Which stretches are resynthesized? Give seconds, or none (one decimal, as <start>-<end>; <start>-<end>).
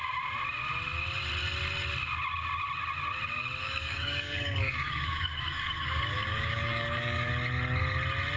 3.6-7.3